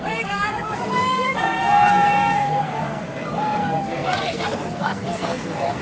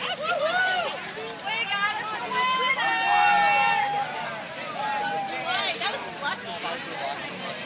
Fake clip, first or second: first